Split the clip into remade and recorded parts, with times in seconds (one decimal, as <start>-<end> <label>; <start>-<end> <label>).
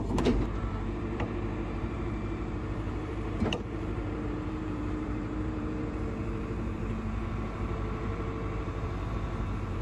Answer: 0.0-9.8 remade